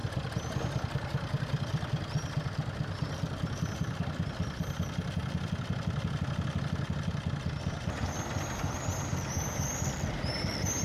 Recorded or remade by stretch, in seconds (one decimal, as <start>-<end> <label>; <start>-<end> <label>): 0.0-10.8 recorded

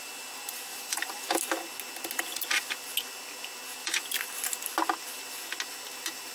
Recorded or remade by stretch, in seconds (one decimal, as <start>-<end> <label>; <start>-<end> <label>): 0.0-0.7 recorded; 0.7-1.4 remade; 1.4-3.8 recorded; 3.8-4.3 remade; 4.3-6.3 recorded

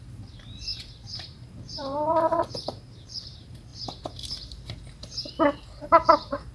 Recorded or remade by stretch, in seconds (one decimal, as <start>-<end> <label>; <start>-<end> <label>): 0.0-6.5 remade

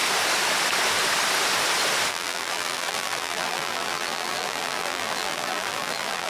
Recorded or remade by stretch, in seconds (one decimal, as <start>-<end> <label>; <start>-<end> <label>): 0.0-2.1 recorded; 2.1-6.3 remade

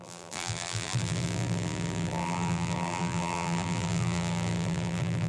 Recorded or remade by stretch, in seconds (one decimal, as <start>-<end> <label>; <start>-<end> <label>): 0.0-5.3 remade

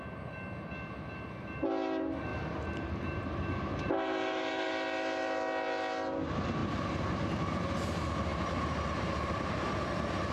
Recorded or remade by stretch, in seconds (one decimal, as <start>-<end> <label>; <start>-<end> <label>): 0.0-2.3 recorded; 2.3-4.7 remade; 4.7-6.6 recorded; 6.6-7.6 remade; 7.6-8.3 recorded; 8.3-8.9 remade; 8.9-10.3 recorded

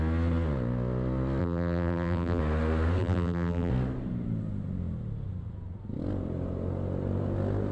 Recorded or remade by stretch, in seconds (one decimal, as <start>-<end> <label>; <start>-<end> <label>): 0.0-1.4 recorded; 1.4-2.4 remade; 2.4-3.0 recorded; 3.0-3.7 remade; 3.7-7.7 recorded